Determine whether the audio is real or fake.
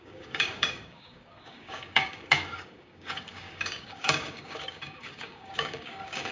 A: fake